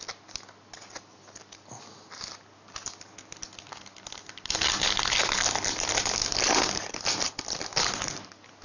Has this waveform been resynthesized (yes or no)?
no